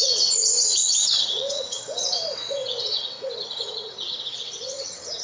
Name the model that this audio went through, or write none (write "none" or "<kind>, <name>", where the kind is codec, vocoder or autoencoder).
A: vocoder, WaveNeXt